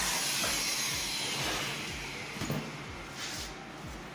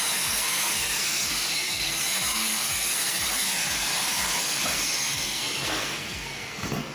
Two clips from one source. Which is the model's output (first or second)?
second